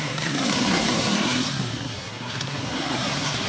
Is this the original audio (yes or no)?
no